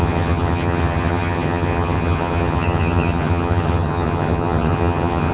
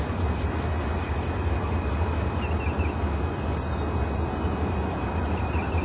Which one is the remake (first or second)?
first